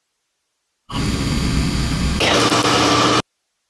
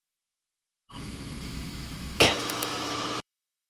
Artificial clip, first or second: second